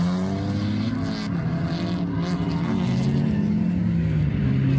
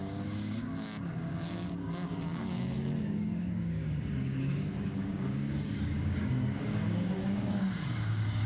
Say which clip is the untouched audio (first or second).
first